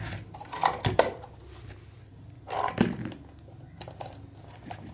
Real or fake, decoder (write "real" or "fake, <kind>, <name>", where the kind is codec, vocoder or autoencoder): real